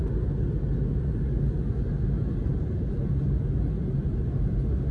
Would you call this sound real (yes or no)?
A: yes